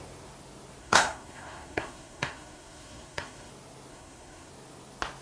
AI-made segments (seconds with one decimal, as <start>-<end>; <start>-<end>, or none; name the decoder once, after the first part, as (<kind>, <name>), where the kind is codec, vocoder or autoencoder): 0.8-3.5 (codec, SNAC); 3.9-4.5